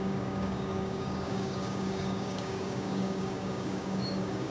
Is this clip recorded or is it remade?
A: remade